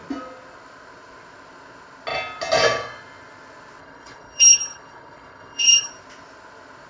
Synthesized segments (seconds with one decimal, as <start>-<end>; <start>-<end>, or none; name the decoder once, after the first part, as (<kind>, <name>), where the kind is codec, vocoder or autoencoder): 3.8-5.9 (codec, HILCodec)